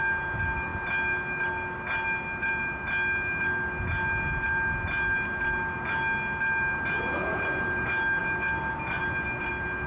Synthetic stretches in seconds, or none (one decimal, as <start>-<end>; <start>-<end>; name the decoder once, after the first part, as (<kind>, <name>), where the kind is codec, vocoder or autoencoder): none